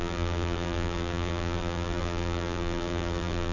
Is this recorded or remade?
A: remade